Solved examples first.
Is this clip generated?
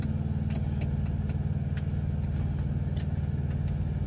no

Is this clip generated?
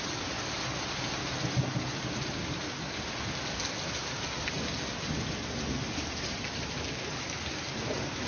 no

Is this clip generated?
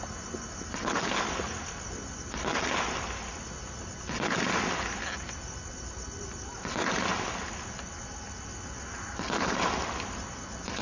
no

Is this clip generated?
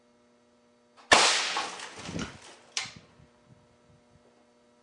no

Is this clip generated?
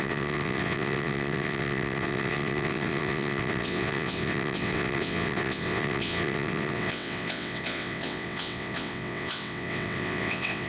yes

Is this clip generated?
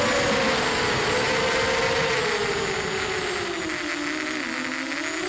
no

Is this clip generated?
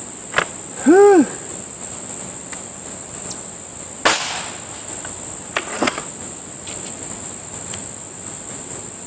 no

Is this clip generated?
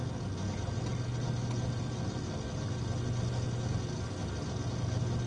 no